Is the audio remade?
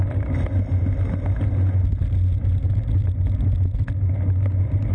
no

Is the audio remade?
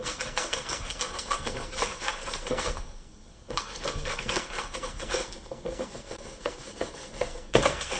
yes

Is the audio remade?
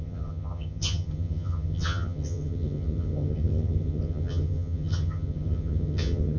yes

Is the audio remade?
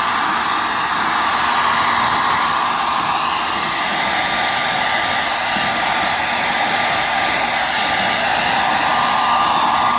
no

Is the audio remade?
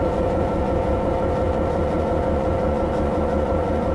yes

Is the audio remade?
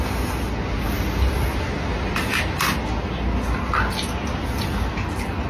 no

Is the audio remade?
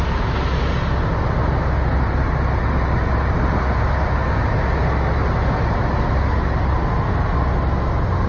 no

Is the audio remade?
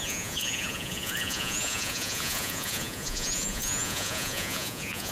yes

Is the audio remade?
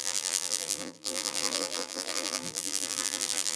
yes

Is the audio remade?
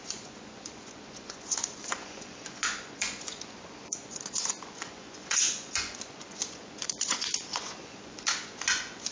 yes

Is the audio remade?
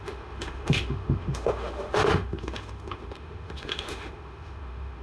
yes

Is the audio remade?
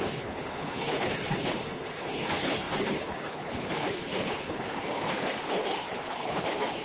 yes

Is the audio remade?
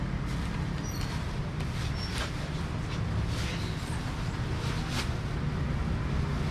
no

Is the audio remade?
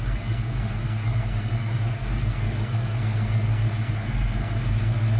yes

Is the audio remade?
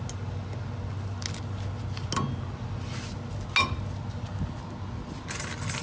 no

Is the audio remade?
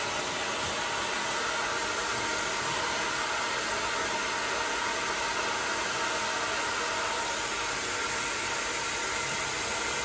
no